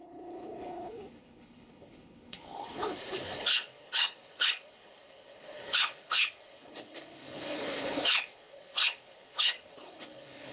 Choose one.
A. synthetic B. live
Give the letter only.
A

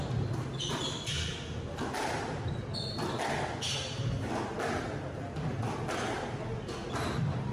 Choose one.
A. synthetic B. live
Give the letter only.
B